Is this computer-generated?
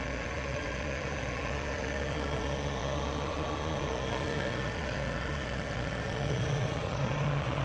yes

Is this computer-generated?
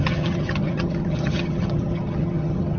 yes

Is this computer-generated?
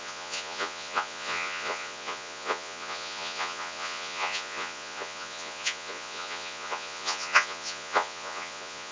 yes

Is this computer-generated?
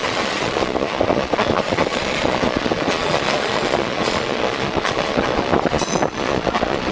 yes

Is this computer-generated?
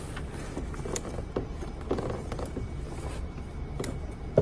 no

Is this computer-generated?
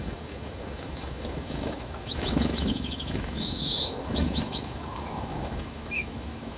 yes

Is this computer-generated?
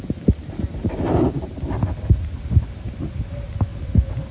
no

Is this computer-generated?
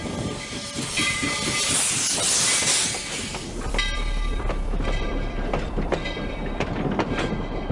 yes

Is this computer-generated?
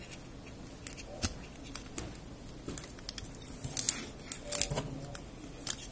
no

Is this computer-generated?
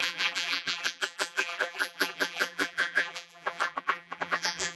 yes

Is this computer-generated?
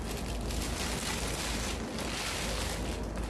no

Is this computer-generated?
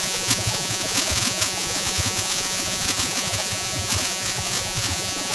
yes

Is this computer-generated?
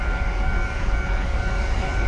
yes